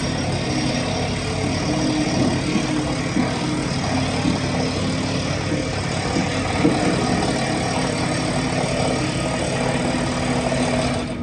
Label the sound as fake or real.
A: real